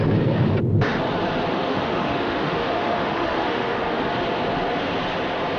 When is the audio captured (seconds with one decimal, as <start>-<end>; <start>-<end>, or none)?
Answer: 0.0-1.5; 4.0-5.6